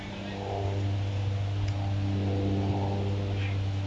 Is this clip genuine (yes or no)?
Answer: yes